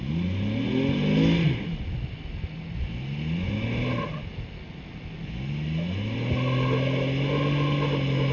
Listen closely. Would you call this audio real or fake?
real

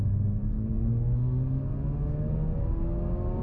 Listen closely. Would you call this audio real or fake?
real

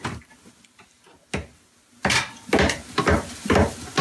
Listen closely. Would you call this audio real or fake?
real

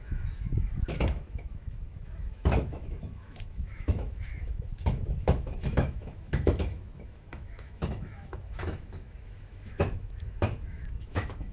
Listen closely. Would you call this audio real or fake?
fake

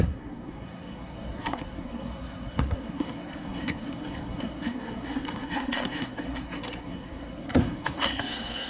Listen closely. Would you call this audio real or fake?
fake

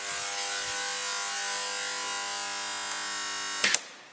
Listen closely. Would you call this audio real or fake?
real